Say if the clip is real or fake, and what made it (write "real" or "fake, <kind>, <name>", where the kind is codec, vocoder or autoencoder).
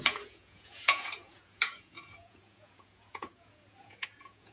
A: fake, vocoder, Vocos